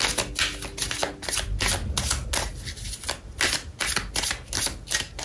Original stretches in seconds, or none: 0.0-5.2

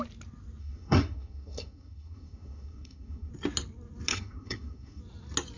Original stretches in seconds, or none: 0.0-0.6; 3.3-4.1; 5.0-5.6

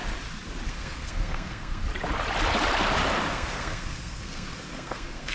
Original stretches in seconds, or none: 0.0-0.7; 1.8-3.3

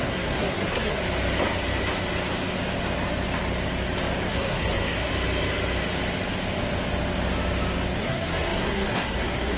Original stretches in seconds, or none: 1.0-4.3; 5.1-8.0